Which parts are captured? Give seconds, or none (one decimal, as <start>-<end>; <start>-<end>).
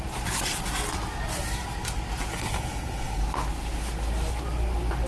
0.0-2.3; 3.2-5.1